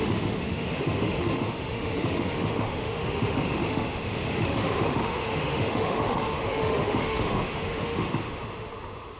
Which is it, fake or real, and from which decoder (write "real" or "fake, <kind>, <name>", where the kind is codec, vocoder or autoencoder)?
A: fake, autoencoder, DAC-VAE